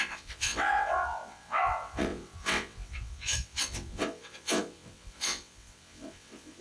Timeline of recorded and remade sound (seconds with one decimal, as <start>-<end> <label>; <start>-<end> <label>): 0.0-6.6 remade